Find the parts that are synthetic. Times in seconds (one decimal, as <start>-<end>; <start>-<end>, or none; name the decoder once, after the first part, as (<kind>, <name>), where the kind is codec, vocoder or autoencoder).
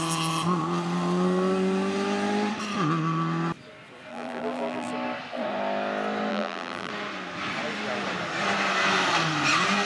4.1-4.9 (vocoder, BigVGAN v2); 6.3-6.9